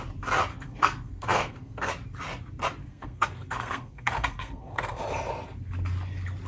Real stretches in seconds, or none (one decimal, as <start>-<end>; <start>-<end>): 0.0-0.5; 1.9-2.8; 5.0-6.5

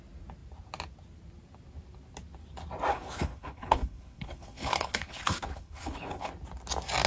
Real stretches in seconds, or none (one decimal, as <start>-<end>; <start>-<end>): 0.0-2.9; 6.3-7.1

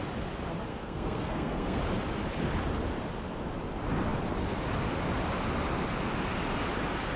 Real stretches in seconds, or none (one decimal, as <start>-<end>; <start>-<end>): 0.0-0.7; 1.8-7.2

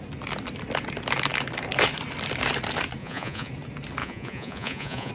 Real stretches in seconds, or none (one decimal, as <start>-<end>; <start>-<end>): 0.0-3.0; 3.5-4.0

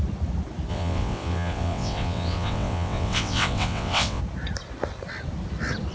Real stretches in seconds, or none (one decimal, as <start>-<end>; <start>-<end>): 0.0-0.7; 4.2-5.9